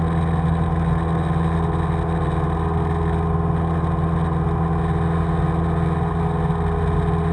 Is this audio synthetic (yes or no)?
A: no